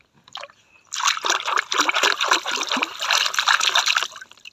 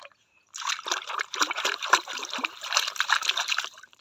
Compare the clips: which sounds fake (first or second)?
second